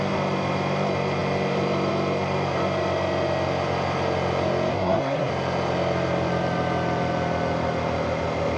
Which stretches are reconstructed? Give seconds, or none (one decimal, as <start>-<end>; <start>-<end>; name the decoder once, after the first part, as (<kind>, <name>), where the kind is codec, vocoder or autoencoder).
4.7-5.3 (codec, SNAC)